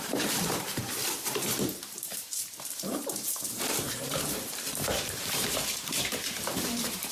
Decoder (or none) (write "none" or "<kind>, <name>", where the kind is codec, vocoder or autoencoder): vocoder, BigVGAN v2